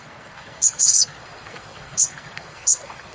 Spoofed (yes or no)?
yes